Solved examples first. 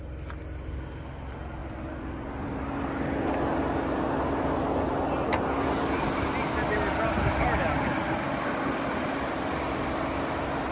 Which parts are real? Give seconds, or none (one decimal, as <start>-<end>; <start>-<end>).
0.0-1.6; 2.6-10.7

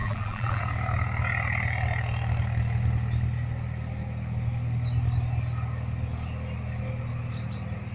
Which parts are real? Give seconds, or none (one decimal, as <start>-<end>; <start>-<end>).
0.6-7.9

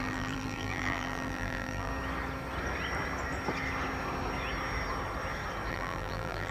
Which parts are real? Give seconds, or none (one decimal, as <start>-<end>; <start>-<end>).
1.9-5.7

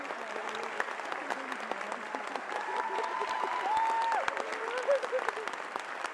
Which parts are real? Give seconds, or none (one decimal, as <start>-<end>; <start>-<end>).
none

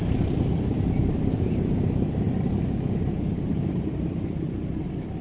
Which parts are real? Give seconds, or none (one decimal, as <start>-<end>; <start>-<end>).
3.1-5.2